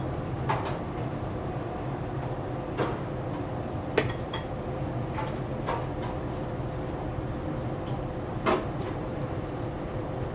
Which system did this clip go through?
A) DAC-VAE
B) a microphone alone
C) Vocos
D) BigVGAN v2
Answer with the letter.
D